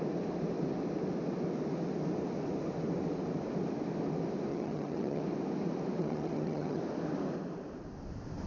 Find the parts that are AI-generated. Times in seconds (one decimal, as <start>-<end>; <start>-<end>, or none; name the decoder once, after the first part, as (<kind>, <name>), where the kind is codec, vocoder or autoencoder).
4.5-5.2 (vocoder, HiFi-GAN); 6.0-6.8